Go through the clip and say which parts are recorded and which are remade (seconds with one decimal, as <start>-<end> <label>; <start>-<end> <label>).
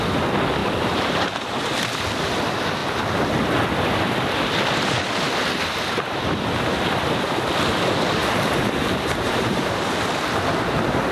0.0-0.6 recorded; 0.6-1.6 remade; 1.6-8.2 recorded; 8.2-9.7 remade; 9.7-11.1 recorded